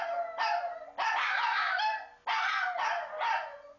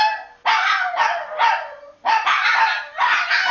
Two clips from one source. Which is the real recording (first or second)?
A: first